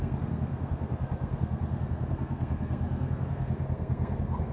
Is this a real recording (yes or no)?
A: no